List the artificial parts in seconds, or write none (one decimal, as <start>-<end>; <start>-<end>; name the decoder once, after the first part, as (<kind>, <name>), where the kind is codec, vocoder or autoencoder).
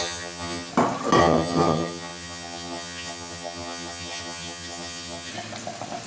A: 0.0-0.7 (vocoder, HiFi-GAN); 1.2-5.3